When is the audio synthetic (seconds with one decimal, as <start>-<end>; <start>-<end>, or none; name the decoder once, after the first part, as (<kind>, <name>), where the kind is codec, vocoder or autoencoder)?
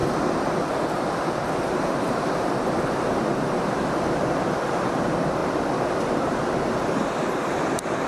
0.0-8.1 (vocoder, BigVGAN v2)